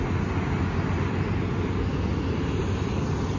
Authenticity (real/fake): real